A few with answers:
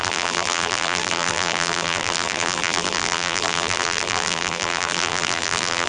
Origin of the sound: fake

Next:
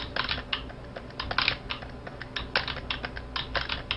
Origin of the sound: real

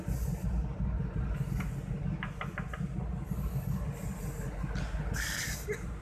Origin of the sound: real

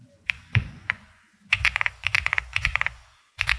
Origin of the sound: fake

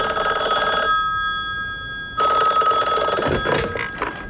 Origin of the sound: real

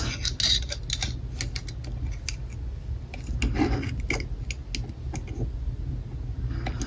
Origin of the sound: real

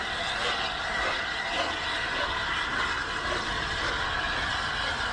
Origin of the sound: real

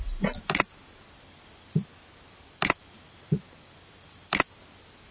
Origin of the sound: real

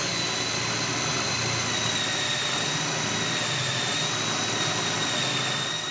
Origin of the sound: real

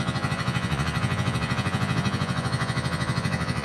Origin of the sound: fake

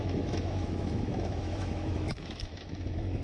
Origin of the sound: fake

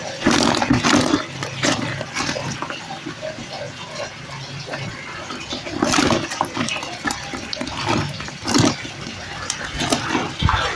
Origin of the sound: real